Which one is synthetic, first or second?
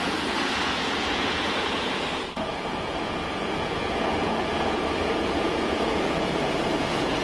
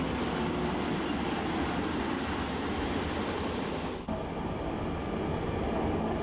first